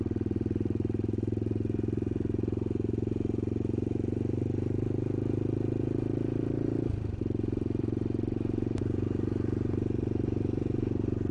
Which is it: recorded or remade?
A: remade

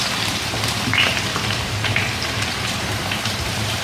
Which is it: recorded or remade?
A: remade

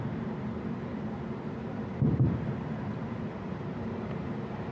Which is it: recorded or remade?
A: remade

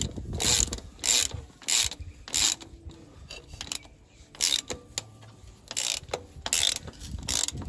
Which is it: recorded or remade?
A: recorded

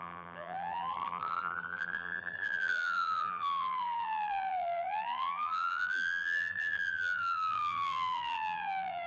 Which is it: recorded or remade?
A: remade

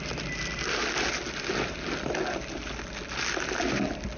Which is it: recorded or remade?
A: recorded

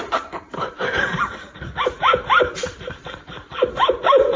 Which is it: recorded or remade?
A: remade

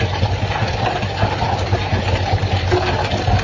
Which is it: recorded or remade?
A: recorded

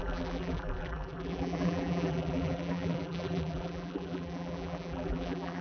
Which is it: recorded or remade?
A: remade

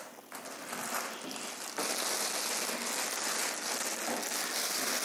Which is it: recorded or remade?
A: recorded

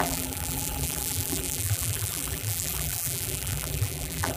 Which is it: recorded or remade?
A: remade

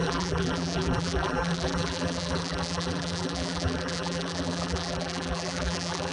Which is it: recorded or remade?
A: remade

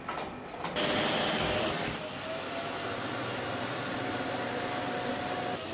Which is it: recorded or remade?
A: remade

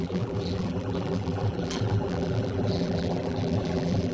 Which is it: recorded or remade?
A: remade